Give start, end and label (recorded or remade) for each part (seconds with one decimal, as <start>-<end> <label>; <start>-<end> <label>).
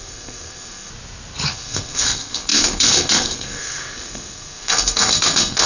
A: 0.0-0.9 remade; 0.9-1.5 recorded; 1.5-5.7 remade